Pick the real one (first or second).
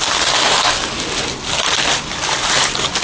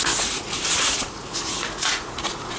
first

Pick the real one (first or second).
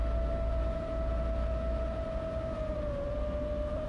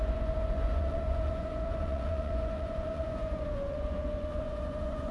first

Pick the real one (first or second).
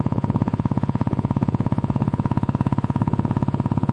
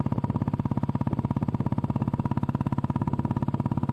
second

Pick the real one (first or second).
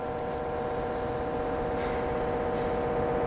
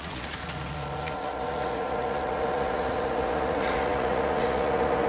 first